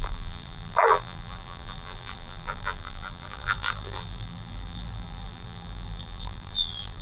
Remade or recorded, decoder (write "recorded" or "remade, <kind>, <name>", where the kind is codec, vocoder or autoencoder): remade, vocoder, BigVGAN v2